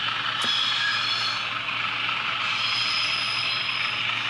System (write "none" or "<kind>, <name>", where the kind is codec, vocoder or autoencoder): none